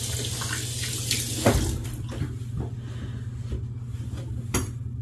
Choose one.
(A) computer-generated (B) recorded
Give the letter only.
B